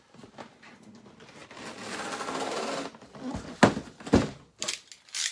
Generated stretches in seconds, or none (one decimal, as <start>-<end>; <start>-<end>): none